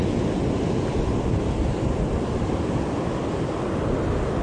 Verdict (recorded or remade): recorded